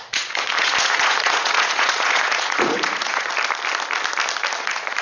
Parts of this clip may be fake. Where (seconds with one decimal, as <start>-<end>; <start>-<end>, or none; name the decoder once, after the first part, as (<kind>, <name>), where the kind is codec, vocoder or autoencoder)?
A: 0.0-3.3 (vocoder, Vocos); 4.6-5.0